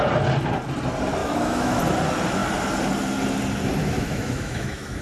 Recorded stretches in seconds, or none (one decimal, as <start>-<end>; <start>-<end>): 0.0-1.2; 1.8-3.8